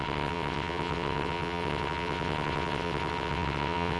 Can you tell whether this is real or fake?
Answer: fake